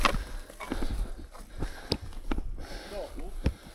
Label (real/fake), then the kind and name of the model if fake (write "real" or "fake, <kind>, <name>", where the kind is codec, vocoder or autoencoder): real